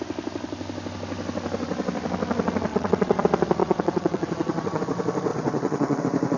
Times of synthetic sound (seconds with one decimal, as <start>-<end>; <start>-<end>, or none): 2.7-3.2; 3.6-4.8; 5.3-6.0